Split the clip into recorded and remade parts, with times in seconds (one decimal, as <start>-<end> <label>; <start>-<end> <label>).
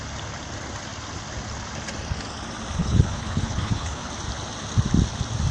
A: 0.0-2.8 recorded; 2.8-4.1 remade; 4.1-5.5 recorded